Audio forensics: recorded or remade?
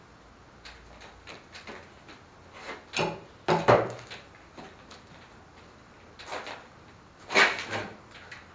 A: recorded